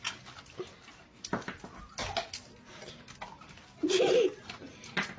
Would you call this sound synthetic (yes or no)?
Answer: no